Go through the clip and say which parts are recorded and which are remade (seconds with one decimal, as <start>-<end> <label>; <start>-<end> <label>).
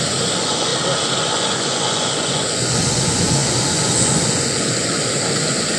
0.0-0.7 remade; 0.7-1.2 recorded; 1.2-5.8 remade